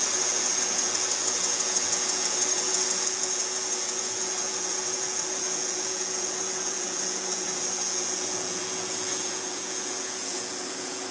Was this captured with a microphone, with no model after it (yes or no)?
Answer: no